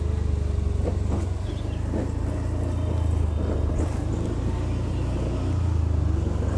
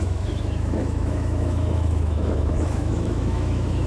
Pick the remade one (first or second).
second